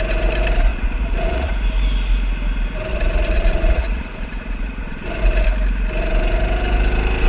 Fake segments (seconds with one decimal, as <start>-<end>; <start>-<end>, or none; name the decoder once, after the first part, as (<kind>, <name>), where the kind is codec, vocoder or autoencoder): 0.7-1.5 (vocoder, Vocos); 2.9-5.2